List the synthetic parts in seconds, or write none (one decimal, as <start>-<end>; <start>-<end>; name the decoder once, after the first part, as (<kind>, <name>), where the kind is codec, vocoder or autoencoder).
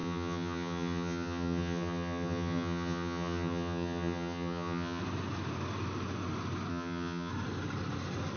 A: 0.0-5.0 (vocoder, HiFi-GAN); 6.7-7.3